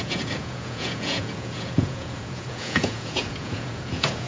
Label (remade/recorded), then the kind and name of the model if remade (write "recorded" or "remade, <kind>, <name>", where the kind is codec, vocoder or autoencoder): remade, vocoder, Vocos